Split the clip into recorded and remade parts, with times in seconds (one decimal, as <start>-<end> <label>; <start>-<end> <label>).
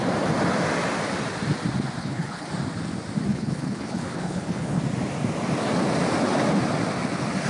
0.0-2.0 recorded; 2.0-2.5 remade; 2.5-3.3 recorded; 3.3-4.8 remade; 4.8-7.5 recorded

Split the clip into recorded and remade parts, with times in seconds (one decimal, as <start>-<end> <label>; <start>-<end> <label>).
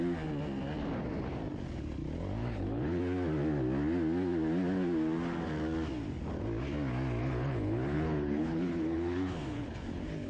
0.0-2.4 recorded; 2.4-3.0 remade; 3.0-7.2 recorded; 7.2-10.3 remade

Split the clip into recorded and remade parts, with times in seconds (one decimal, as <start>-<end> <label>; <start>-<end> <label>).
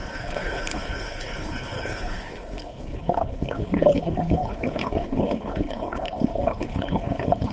0.0-7.5 remade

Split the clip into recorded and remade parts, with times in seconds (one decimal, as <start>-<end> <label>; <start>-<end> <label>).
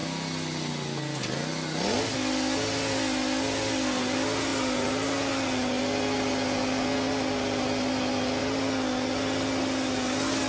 0.0-10.5 recorded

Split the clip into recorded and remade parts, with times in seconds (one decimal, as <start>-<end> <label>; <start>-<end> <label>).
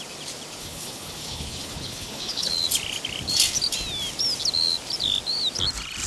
0.0-0.6 recorded; 0.6-2.5 remade; 2.5-6.1 recorded